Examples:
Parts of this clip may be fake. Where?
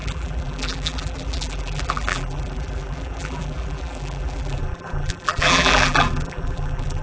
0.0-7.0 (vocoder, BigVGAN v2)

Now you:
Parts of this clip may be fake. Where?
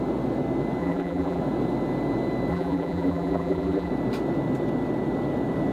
0.8-1.4 (vocoder, BigVGAN v2); 2.5-3.9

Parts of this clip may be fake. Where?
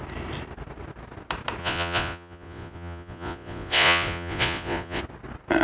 1.6-5.0 (vocoder, Vocos)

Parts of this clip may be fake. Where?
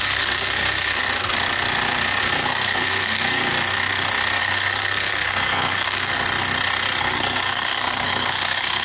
0.0-1.0 (codec, SNAC); 2.2-3.5; 4.4-6.1; 7.0-8.8